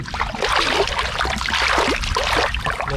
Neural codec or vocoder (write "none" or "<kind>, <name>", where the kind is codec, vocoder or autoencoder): none